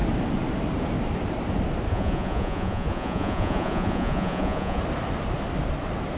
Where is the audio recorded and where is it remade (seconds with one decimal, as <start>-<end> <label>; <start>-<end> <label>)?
0.0-1.9 recorded; 1.9-4.8 remade; 4.8-6.2 recorded